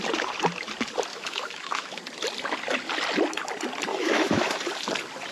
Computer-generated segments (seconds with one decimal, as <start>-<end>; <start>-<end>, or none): 1.1-2.0; 3.9-4.6